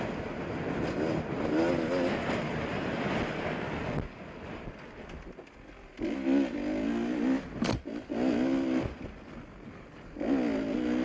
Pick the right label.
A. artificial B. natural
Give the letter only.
B